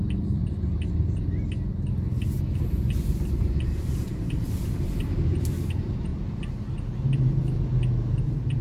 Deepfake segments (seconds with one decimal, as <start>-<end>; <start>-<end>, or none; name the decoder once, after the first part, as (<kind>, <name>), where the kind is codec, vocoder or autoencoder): 0.0-0.4 (vocoder, BigVGAN v2); 2.4-6.1; 8.2-8.6